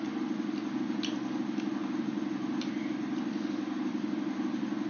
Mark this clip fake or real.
real